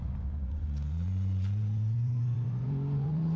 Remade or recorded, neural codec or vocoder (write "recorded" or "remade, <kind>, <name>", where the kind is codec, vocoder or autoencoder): remade, vocoder, Vocos